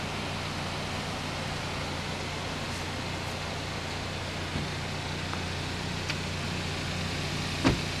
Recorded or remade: recorded